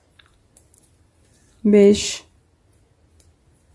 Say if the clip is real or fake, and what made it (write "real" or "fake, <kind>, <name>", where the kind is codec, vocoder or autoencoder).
real